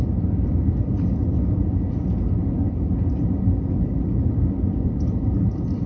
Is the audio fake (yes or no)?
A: no